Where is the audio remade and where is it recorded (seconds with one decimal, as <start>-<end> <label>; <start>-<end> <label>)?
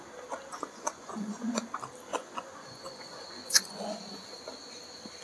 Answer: 0.0-0.5 recorded; 0.5-1.6 remade; 1.6-2.1 recorded; 2.1-4.3 remade; 4.3-5.2 recorded